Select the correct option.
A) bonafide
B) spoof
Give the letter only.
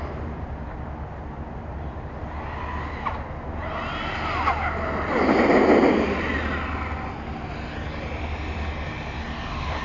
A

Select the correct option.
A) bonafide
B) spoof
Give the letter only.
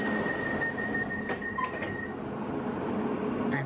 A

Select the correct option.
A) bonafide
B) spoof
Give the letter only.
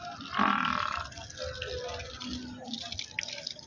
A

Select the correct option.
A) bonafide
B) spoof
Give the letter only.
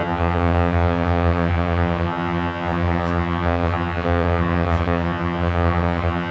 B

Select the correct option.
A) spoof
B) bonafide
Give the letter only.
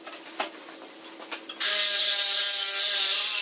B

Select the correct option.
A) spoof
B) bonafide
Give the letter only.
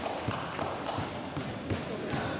B